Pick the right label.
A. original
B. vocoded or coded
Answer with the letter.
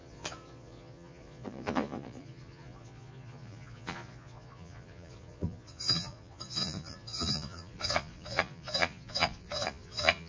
B